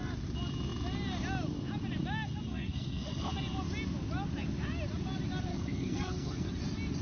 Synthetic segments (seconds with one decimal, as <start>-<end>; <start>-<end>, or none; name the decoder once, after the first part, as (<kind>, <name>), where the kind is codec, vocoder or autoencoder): 2.5-3.3 (codec, SNAC); 5.5-6.5